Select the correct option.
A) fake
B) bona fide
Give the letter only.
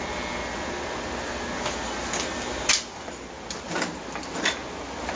B